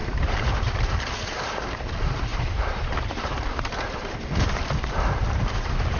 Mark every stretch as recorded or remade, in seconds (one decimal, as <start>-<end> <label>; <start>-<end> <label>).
0.0-1.1 remade; 1.1-2.3 recorded; 2.3-6.0 remade

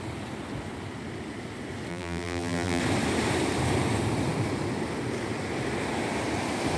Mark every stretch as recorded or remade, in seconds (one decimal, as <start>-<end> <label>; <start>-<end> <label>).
0.0-1.9 recorded; 1.9-2.8 remade; 2.8-6.8 recorded

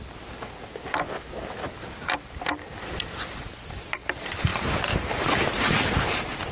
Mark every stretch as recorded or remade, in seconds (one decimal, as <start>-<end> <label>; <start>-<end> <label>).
0.0-4.5 recorded; 4.5-5.9 remade; 5.9-6.5 recorded